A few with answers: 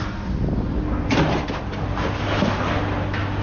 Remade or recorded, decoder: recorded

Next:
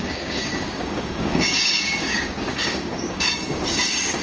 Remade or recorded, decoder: remade, codec, DAC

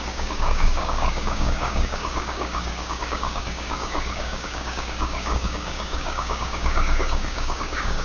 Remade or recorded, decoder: remade, codec, DAC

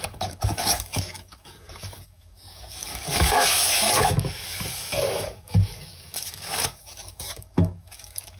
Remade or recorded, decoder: remade, codec, DAC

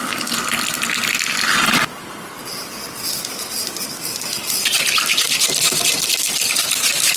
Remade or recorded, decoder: recorded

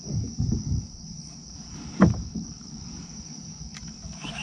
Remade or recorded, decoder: remade, codec, DAC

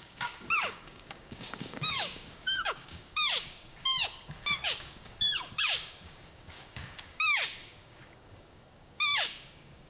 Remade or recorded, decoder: remade, codec, DAC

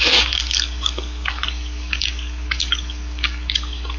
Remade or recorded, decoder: remade, codec, DAC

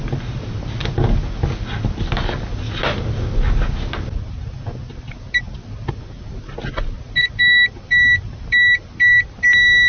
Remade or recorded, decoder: recorded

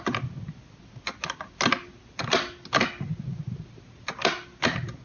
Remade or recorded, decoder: recorded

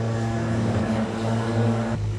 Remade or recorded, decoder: remade, codec, DAC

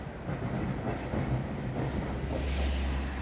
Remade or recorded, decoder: recorded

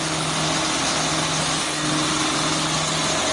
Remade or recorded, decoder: recorded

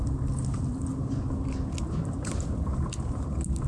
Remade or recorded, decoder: recorded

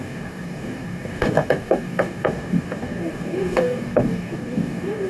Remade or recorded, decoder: remade, codec, DAC